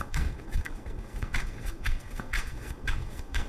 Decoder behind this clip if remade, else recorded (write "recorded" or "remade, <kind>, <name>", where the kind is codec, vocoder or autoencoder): remade, codec, SNAC